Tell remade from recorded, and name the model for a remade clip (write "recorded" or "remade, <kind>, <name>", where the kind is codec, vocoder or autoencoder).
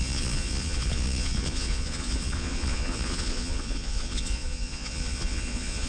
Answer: remade, vocoder, Vocos